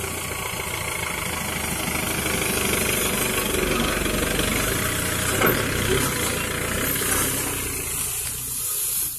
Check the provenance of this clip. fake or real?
real